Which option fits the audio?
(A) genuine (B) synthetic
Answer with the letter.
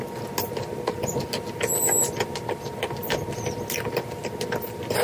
A